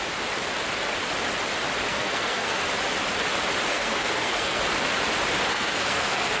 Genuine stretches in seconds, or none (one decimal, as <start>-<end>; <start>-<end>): 0.0-1.9; 2.6-3.7; 4.6-5.5